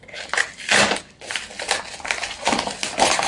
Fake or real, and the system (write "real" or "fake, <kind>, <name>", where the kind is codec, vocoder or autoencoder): real